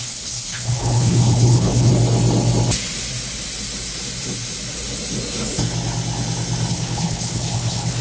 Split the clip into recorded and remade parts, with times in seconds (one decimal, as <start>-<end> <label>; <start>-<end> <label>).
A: 0.0-1.9 remade; 1.9-6.7 recorded; 6.7-8.0 remade